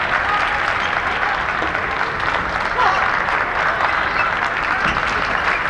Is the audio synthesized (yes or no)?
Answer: no